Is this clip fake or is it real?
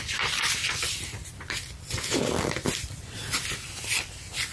real